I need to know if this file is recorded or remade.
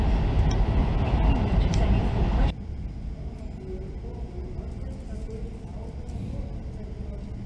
recorded